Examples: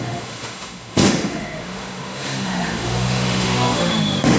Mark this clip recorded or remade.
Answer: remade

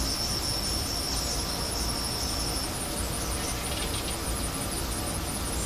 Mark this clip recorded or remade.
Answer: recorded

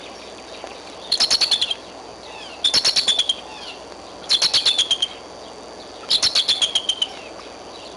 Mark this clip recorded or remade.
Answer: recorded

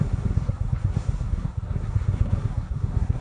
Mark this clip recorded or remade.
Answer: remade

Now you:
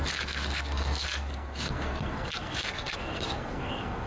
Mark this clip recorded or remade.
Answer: remade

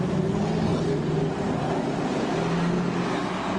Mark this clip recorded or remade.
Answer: recorded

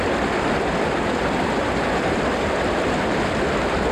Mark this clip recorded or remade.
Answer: remade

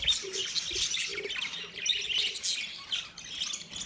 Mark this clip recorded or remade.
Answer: recorded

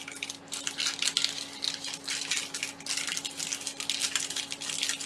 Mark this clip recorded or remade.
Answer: recorded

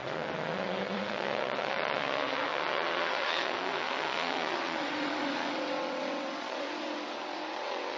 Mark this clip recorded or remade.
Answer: remade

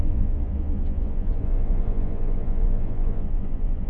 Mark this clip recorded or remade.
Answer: remade